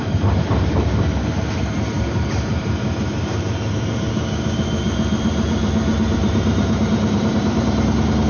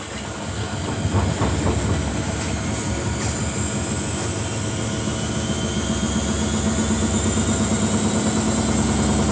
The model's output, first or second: first